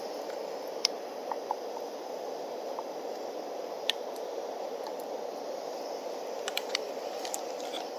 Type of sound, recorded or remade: recorded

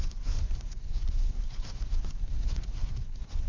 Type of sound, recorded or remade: remade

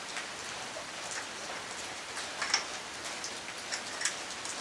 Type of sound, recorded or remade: recorded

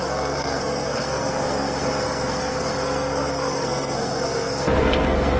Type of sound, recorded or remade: remade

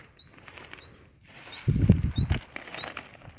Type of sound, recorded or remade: recorded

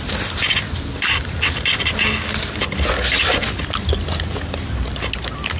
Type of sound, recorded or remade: recorded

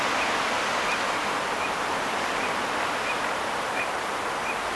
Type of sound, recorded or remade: recorded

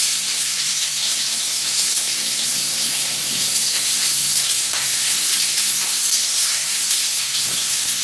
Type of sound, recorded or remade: remade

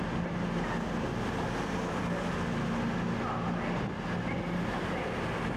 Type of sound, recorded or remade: recorded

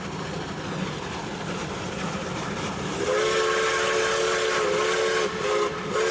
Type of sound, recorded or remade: recorded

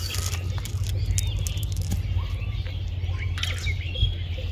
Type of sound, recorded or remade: recorded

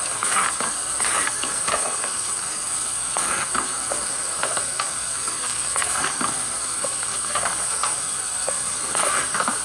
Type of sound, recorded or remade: remade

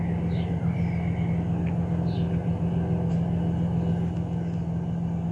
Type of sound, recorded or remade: recorded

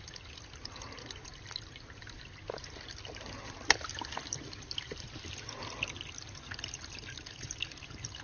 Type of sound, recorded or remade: recorded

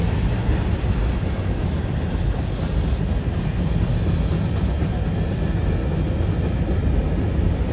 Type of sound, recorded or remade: recorded